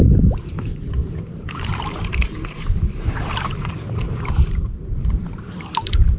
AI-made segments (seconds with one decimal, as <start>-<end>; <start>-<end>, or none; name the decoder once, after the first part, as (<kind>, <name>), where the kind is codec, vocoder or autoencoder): 0.0-6.2 (vocoder, BigVGAN v2)